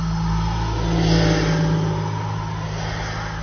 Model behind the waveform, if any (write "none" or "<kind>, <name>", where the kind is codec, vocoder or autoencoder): none